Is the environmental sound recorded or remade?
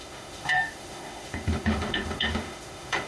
remade